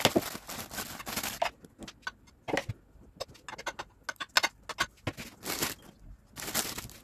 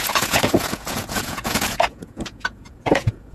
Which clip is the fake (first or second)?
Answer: second